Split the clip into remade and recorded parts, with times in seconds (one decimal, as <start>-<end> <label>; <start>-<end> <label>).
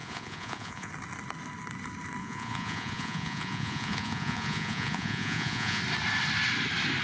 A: 0.0-0.9 remade; 0.9-2.2 recorded; 2.2-5.8 remade; 5.8-7.0 recorded